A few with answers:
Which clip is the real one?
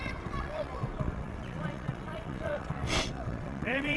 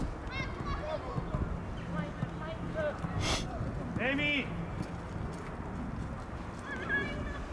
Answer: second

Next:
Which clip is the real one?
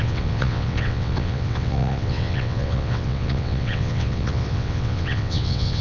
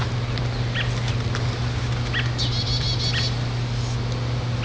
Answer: second